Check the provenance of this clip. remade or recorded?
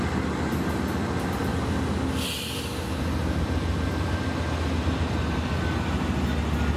recorded